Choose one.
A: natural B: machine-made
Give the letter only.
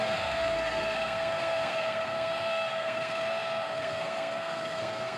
B